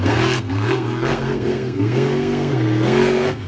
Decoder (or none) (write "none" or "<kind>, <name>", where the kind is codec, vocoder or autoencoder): codec, SNAC